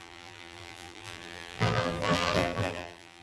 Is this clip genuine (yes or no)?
no